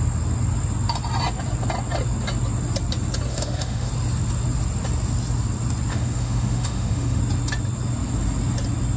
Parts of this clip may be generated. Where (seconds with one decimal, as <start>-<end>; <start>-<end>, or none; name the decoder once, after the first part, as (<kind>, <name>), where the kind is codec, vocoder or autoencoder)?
3.3-3.9 (autoencoder, DAC-VAE); 5.9-7.2